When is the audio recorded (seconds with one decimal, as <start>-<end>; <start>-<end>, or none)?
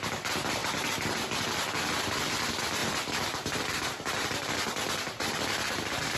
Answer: 0.0-0.6; 2.0-2.8; 5.5-6.2